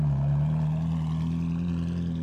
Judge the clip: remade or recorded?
recorded